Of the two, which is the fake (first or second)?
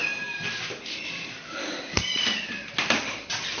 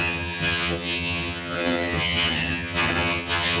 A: second